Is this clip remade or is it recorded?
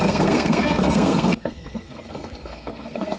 remade